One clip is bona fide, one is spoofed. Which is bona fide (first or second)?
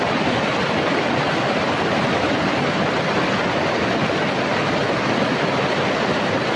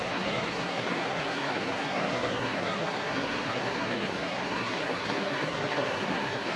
first